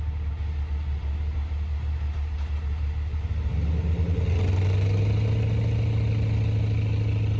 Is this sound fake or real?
real